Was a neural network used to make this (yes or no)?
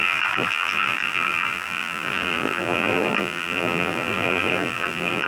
yes